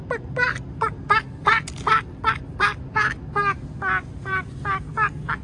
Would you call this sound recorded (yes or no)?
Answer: yes